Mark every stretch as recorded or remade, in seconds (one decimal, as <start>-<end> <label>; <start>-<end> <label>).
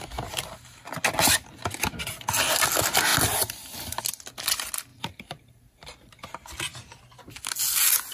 0.0-4.9 recorded; 4.9-6.1 remade; 6.1-6.7 recorded; 6.7-7.3 remade; 7.3-8.1 recorded